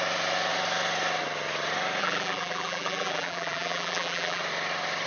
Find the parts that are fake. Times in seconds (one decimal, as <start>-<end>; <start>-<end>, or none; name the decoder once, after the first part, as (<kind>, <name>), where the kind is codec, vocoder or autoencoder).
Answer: 2.0-4.4 (vocoder, BigVGAN v2)

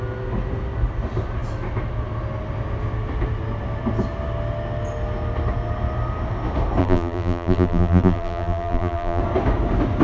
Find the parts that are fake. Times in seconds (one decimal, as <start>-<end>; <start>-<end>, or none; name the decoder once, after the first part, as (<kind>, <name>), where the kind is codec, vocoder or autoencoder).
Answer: 6.8-9.2 (vocoder, BigVGAN v2)